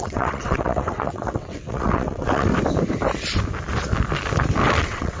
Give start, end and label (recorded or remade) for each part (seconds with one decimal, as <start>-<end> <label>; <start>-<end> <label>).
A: 0.0-2.5 remade; 2.5-4.8 recorded; 4.8-5.2 remade